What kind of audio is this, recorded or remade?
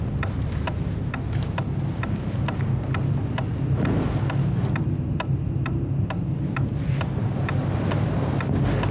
recorded